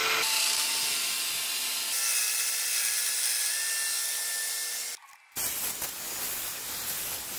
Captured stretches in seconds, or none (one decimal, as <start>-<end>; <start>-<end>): 0.0-7.4